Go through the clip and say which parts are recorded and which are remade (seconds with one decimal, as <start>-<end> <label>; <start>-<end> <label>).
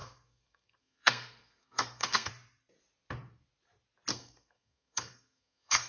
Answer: 0.0-2.3 remade; 2.3-4.1 recorded; 4.1-5.9 remade